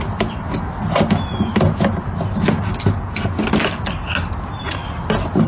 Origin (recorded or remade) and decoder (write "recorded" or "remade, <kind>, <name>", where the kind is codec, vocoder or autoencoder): recorded